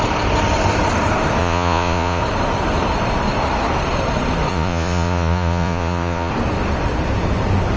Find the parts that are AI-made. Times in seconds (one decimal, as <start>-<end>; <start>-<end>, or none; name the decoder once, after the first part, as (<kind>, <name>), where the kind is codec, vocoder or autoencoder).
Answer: 1.4-2.2 (vocoder, Vocos); 4.5-6.3